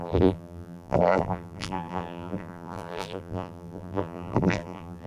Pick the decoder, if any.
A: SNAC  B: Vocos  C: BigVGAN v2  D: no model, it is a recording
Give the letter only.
C